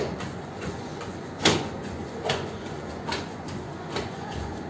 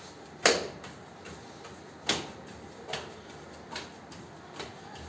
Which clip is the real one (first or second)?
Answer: second